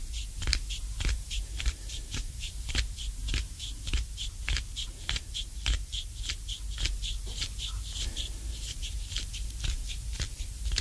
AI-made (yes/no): yes